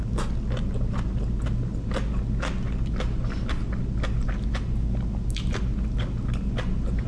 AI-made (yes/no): no